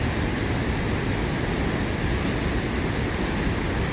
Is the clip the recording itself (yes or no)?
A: yes